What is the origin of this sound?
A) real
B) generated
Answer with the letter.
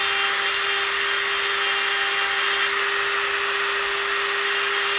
A